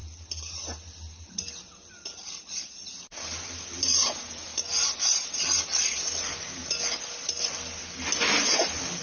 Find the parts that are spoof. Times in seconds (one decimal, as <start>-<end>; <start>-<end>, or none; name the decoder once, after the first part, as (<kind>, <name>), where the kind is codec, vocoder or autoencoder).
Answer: none